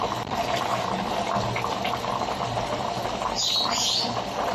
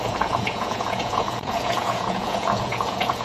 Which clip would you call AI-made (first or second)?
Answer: second